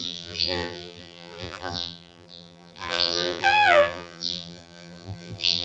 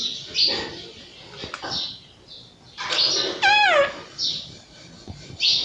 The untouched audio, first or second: second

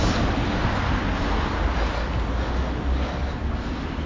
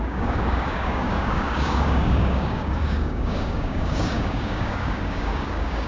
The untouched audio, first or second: first